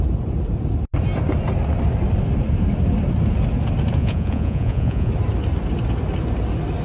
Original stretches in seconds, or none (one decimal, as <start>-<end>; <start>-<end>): 0.0-4.0; 5.1-6.8